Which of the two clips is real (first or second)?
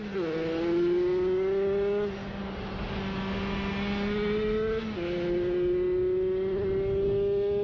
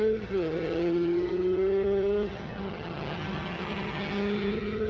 first